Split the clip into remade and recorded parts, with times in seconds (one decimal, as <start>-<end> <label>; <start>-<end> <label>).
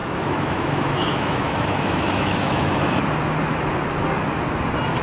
0.0-3.0 remade; 3.0-5.0 recorded